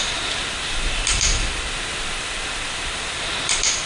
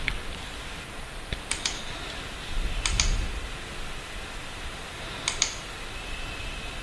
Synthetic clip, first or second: first